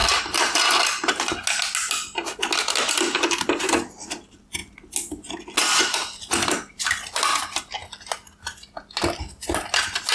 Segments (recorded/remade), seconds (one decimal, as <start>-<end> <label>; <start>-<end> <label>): 0.0-10.1 recorded